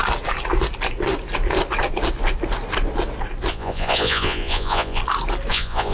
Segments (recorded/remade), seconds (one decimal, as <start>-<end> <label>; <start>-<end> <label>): 0.0-3.5 recorded; 3.5-5.0 remade; 5.0-5.5 recorded; 5.5-5.9 remade